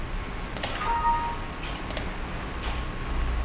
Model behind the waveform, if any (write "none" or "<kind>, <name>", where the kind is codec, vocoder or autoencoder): none